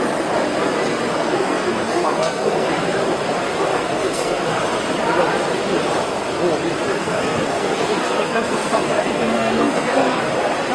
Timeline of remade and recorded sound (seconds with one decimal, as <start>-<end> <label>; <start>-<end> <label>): 0.0-1.1 recorded; 1.1-2.7 remade; 2.7-3.7 recorded; 3.7-4.6 remade; 4.6-6.9 recorded; 6.9-10.2 remade; 10.2-10.7 recorded